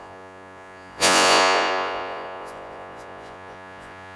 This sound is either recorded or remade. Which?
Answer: remade